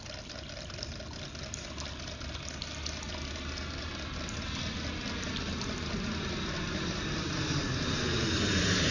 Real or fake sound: real